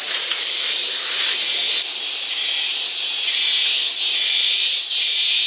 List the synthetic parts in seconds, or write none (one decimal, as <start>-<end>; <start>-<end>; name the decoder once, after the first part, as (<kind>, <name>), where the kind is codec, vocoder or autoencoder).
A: 0.0-0.8 (vocoder, Vocos); 4.1-4.6